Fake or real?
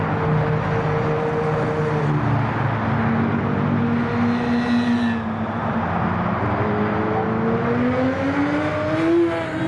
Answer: real